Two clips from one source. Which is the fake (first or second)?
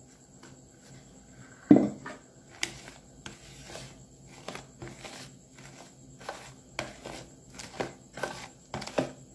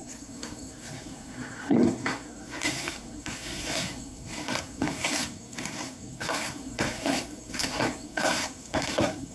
second